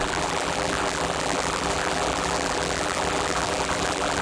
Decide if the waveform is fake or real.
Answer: fake